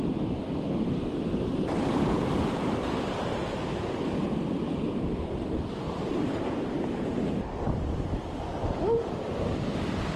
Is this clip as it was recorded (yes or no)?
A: yes